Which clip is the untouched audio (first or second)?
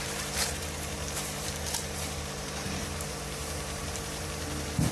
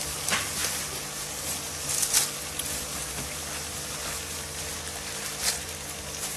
second